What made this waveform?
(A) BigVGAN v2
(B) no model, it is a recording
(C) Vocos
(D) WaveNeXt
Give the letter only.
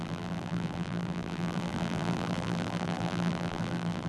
A